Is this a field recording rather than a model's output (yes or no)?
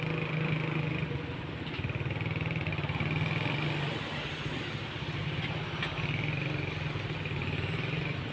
yes